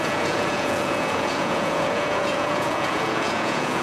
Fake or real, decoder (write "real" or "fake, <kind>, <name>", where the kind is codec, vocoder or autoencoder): fake, vocoder, Vocos